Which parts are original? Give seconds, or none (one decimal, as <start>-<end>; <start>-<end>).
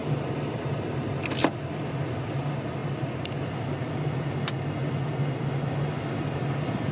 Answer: 1.3-6.9